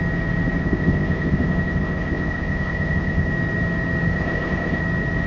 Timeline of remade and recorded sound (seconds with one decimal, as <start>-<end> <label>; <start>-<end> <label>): 0.0-0.6 recorded; 0.6-3.3 remade; 3.3-4.1 recorded; 4.1-4.8 remade; 4.8-5.3 recorded